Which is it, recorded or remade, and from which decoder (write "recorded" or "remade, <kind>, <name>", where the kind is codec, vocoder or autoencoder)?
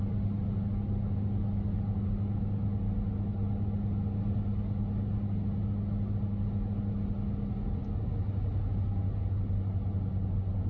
recorded